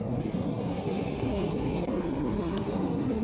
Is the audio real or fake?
fake